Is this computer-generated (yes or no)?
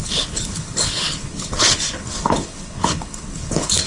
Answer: yes